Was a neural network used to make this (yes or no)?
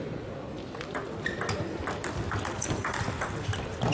yes